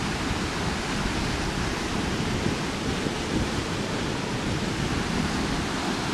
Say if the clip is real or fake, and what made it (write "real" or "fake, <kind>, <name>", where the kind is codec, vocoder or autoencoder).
real